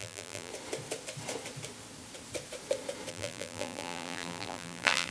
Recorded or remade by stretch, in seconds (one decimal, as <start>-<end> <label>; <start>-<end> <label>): 0.0-0.5 remade; 0.5-3.1 recorded; 3.1-5.1 remade